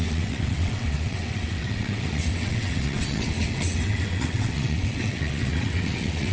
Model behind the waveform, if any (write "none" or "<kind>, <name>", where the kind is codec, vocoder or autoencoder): vocoder, WaveNeXt